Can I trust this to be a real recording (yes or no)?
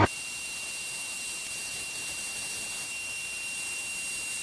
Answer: no